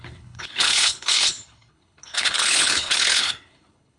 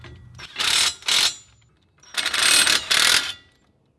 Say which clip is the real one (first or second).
second